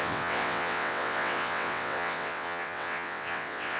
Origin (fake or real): fake